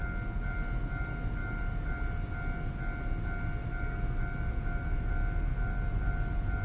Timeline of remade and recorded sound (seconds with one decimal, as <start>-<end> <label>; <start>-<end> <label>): 0.0-6.6 recorded

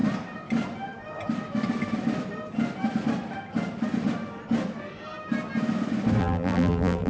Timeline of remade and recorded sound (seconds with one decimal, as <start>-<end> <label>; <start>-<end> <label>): 0.0-6.2 recorded; 6.2-7.1 remade

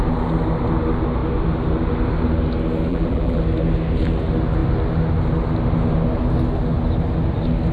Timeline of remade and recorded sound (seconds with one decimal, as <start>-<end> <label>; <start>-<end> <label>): 0.0-2.9 recorded; 2.9-3.4 remade; 3.4-7.7 recorded

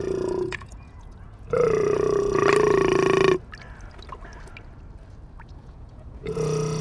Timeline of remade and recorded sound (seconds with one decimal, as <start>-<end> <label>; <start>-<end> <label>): 0.0-2.4 remade; 2.4-5.4 recorded; 5.4-6.8 remade

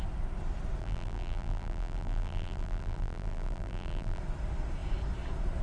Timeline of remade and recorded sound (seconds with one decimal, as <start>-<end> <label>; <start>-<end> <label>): 0.0-0.8 recorded; 0.8-4.2 remade; 4.2-5.6 recorded

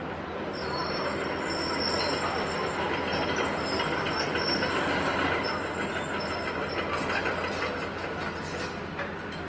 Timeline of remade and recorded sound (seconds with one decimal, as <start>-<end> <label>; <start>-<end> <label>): 0.0-9.5 recorded

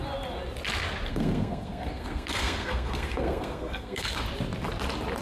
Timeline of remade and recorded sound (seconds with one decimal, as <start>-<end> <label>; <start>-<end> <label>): 0.0-1.1 recorded; 1.1-4.2 remade; 4.2-5.2 recorded

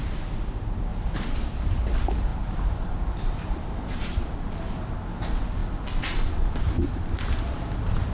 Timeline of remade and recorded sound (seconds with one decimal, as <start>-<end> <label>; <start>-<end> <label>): 0.0-0.9 recorded; 0.9-1.8 remade; 1.8-2.3 recorded; 2.3-4.9 remade; 4.9-8.1 recorded